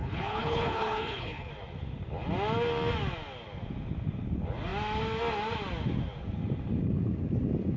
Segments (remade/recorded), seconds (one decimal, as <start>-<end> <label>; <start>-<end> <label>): 0.0-1.5 remade; 1.5-7.8 recorded